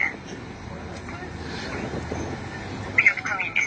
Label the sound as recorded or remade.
recorded